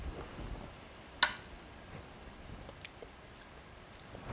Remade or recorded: recorded